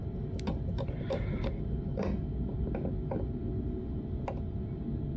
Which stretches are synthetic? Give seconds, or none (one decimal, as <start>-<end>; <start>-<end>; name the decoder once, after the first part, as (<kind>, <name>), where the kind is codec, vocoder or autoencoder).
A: 0.0-1.7 (vocoder, BigVGAN v2)